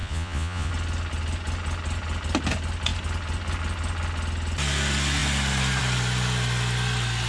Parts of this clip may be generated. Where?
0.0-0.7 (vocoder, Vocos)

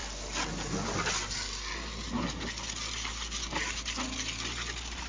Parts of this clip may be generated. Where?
none

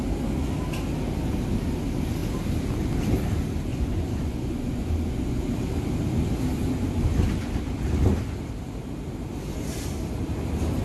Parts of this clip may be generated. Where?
3.7-5.4 (vocoder, Vocos)

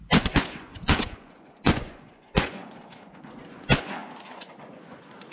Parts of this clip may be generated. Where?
0.0-5.3 (vocoder, Vocos)

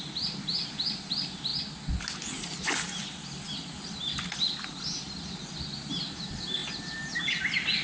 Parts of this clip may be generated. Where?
none

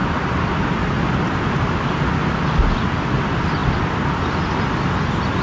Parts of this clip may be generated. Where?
none

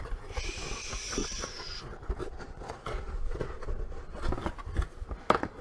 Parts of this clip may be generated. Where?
1.2-1.8 (vocoder, Vocos); 2.2-4.3